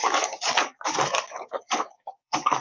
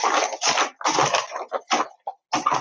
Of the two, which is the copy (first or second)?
first